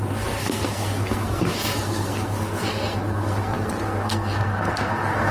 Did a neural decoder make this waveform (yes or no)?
yes